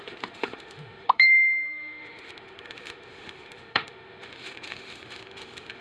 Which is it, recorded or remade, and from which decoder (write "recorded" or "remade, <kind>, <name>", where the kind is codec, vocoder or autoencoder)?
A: remade, autoencoder, DAC-VAE